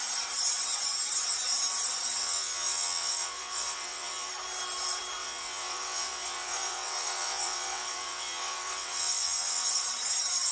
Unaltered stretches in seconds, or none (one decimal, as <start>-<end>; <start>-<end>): 0.0-2.2; 4.3-5.2; 9.7-10.5